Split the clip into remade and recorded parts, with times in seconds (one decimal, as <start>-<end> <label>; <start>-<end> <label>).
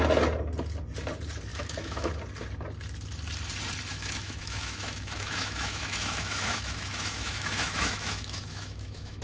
0.0-1.5 recorded; 1.5-2.1 remade; 2.1-3.9 recorded; 3.9-9.2 remade